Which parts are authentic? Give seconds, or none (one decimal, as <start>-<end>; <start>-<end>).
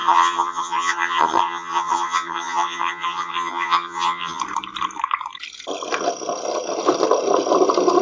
4.4-8.0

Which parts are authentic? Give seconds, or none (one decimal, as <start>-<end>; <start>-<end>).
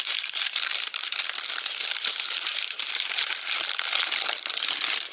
0.0-5.1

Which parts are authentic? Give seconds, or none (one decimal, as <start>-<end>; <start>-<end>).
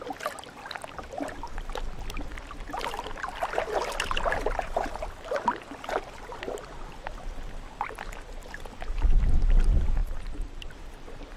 0.0-10.0; 10.7-11.4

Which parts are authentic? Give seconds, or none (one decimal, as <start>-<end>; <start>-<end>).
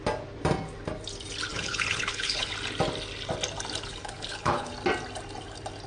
0.0-1.5; 2.5-3.9; 4.7-5.9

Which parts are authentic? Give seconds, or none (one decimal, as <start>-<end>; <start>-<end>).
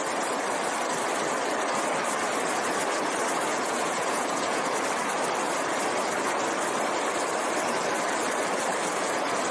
0.0-3.5; 4.7-9.5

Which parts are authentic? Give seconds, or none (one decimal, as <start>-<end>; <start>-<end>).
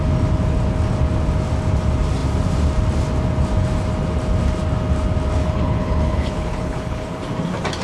0.0-5.4; 7.2-7.8